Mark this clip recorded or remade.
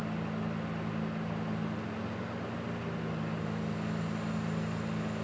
recorded